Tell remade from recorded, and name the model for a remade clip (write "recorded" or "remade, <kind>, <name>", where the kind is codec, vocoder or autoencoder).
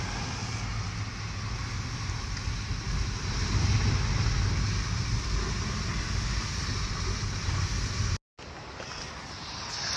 recorded